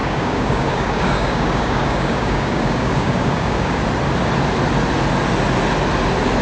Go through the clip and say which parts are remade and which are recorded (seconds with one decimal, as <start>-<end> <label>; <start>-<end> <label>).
0.0-3.8 remade; 3.8-6.4 recorded